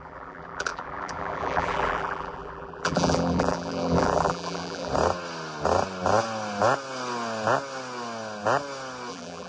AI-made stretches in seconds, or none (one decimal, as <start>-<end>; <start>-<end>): 0.0-4.9; 9.1-9.5